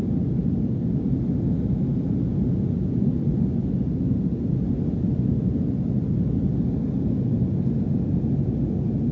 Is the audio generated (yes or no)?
no